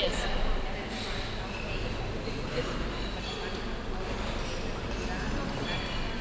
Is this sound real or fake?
real